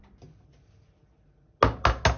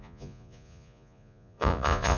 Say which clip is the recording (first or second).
first